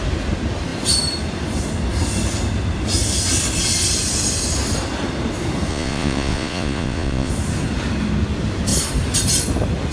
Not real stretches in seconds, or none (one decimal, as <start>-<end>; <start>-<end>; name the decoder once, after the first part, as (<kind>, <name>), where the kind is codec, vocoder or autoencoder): 5.7-7.3 (vocoder, Vocos)